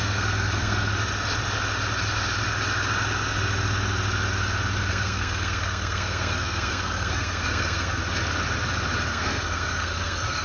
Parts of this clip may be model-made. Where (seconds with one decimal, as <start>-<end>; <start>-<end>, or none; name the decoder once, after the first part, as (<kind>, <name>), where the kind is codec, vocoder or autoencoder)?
0.0-0.9 (codec, SNAC); 4.9-8.0; 9.1-10.4